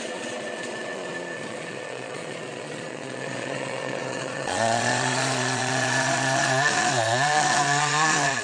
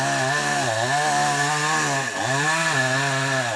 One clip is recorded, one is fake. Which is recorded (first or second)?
second